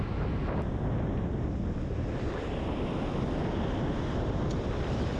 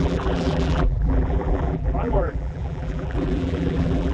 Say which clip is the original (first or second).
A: first